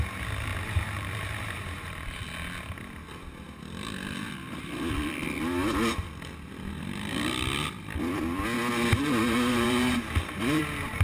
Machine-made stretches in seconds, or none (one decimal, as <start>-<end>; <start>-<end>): 0.5-2.2; 8.9-10.6